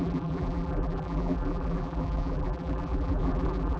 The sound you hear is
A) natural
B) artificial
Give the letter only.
B